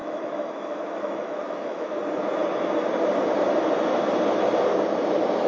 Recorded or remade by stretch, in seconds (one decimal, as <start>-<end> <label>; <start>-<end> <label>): 0.0-2.0 remade; 2.0-5.5 recorded